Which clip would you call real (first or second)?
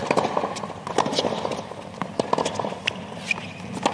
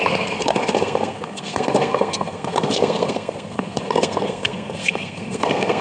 first